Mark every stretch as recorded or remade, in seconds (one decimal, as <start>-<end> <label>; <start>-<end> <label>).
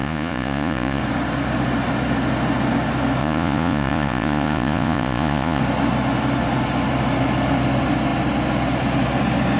0.0-1.0 remade; 1.0-3.2 recorded; 3.2-5.6 remade; 5.6-9.6 recorded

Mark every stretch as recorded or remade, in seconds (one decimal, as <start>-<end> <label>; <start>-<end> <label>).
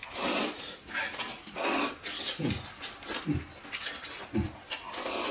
0.0-3.2 remade; 3.2-5.3 recorded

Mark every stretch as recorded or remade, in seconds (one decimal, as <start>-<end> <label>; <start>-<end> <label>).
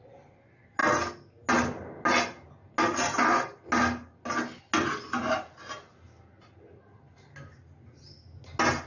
0.0-8.9 recorded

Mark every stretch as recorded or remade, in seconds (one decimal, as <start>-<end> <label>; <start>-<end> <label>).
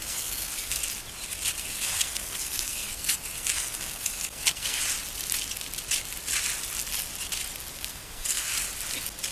0.0-0.8 remade; 0.8-1.6 recorded; 1.6-4.8 remade; 4.8-7.9 recorded; 7.9-8.5 remade; 8.5-9.3 recorded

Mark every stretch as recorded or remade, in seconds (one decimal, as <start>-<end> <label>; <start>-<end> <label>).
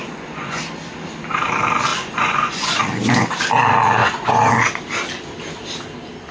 0.0-0.6 remade; 0.6-1.9 recorded; 1.9-2.8 remade; 2.8-4.0 recorded; 4.0-4.5 remade; 4.5-6.3 recorded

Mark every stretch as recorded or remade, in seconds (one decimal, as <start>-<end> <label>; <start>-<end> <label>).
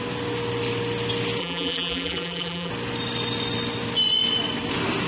0.0-1.4 recorded; 1.4-2.7 remade; 2.7-5.1 recorded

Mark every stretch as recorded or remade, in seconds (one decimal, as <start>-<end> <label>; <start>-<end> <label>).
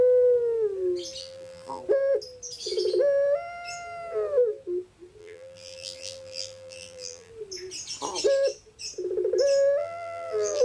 0.0-1.2 recorded; 1.2-1.8 remade; 1.8-5.2 recorded; 5.2-7.3 remade; 7.3-9.8 recorded; 9.8-10.6 remade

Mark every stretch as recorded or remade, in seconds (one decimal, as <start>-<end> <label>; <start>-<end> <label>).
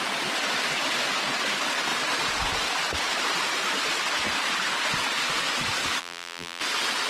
0.0-6.0 recorded; 6.0-6.6 remade; 6.6-7.1 recorded